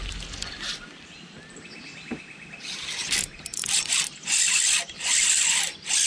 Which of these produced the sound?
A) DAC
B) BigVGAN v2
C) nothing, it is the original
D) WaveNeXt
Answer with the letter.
C